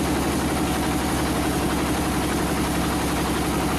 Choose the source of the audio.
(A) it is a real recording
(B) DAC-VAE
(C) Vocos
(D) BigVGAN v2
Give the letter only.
A